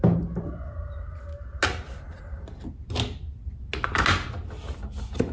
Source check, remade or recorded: recorded